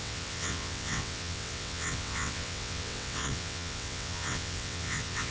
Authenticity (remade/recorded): remade